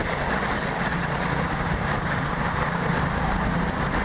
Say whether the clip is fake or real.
real